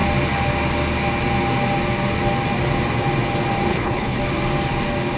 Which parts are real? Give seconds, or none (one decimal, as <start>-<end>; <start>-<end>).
0.0-3.7; 4.2-5.2